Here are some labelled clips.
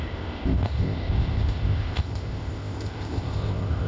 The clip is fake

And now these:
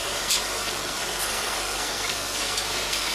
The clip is fake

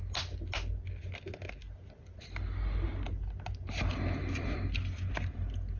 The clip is real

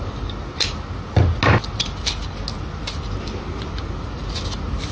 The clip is real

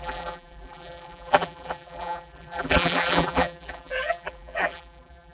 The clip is fake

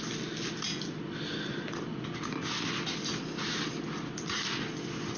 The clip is real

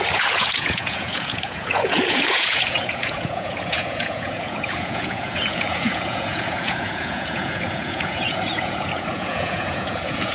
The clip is fake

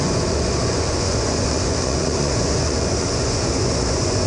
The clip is fake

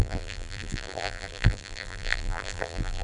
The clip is fake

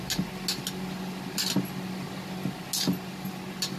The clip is real